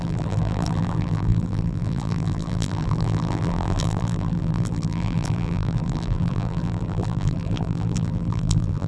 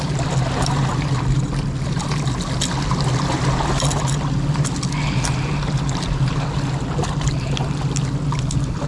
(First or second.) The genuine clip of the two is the second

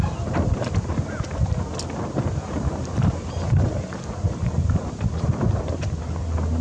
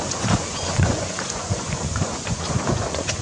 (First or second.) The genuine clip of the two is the first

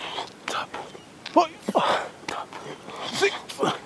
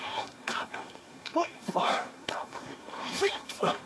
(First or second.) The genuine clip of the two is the first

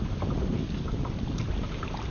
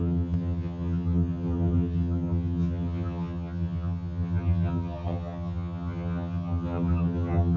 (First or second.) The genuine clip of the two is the first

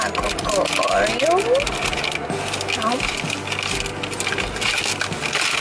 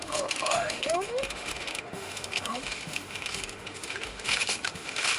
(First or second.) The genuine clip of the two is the first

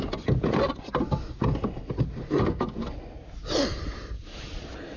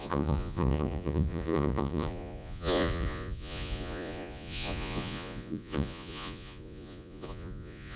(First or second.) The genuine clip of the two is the first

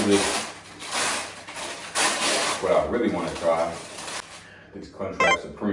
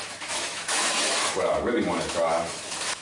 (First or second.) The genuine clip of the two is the first